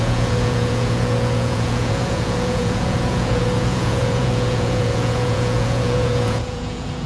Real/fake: fake